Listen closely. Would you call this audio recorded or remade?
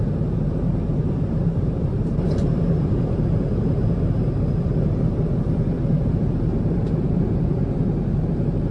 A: remade